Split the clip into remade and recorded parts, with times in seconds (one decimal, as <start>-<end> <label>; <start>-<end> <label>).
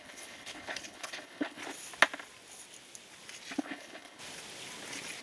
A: 0.0-1.6 remade; 1.6-3.6 recorded; 3.6-4.2 remade; 4.2-5.2 recorded